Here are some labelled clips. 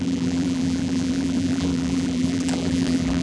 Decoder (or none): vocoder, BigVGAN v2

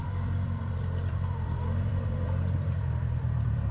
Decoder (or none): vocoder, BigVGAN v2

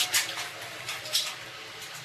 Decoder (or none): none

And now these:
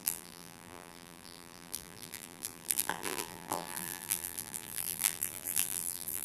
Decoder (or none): vocoder, BigVGAN v2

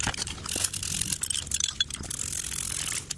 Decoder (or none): none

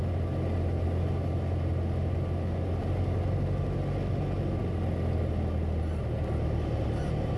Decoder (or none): none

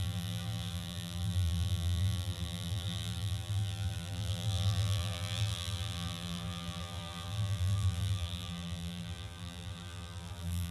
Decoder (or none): vocoder, BigVGAN v2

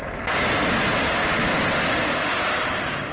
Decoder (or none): none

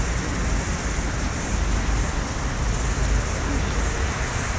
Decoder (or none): vocoder, BigVGAN v2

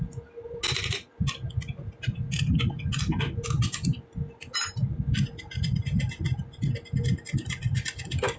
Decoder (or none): none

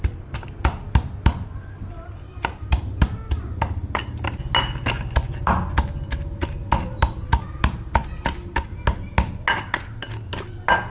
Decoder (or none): none